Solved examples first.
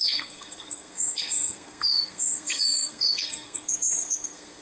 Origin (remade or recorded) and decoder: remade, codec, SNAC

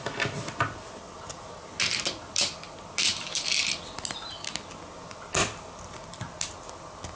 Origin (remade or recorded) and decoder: recorded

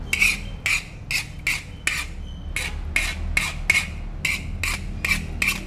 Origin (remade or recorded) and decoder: recorded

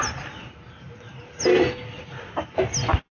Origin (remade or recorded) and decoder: recorded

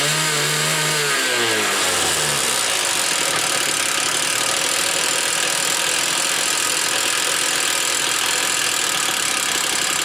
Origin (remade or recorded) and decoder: recorded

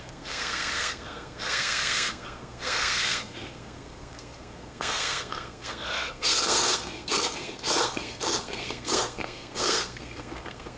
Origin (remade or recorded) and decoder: remade, codec, SNAC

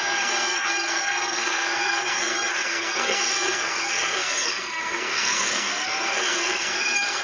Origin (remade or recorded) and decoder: remade, codec, SNAC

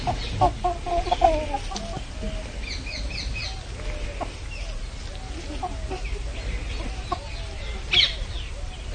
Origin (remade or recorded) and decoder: recorded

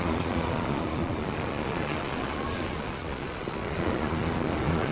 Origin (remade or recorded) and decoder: remade, vocoder, Vocos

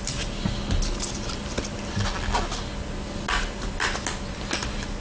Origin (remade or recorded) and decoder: recorded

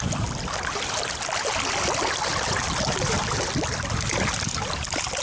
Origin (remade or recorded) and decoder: recorded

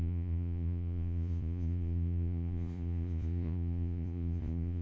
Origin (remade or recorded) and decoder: remade, vocoder, Vocos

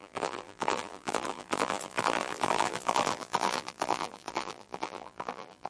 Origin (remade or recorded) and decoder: remade, vocoder, BigVGAN v2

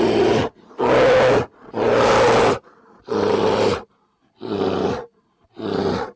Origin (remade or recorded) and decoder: recorded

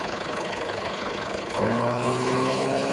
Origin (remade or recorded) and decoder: remade, codec, HILCodec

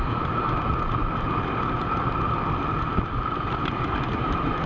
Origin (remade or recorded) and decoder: recorded